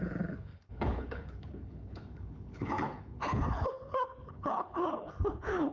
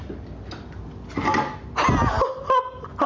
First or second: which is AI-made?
first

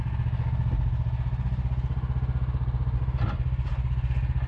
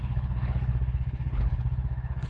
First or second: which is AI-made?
second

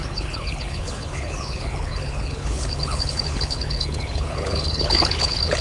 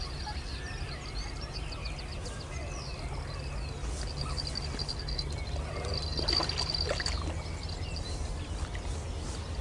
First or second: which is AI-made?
first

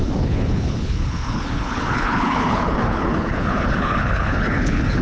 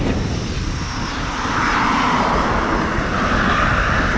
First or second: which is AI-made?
first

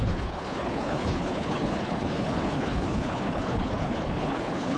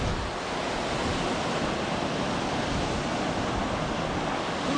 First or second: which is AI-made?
first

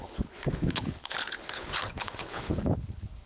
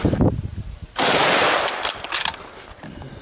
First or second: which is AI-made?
first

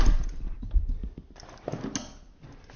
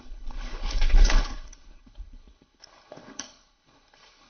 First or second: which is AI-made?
second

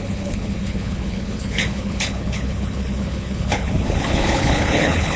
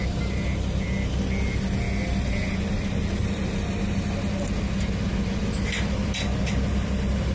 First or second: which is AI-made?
first